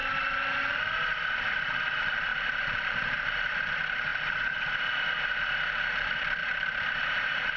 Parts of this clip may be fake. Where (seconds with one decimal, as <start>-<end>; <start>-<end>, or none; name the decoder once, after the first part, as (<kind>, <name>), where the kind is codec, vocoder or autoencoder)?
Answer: 2.3-3.3 (vocoder, BigVGAN v2); 6.4-7.6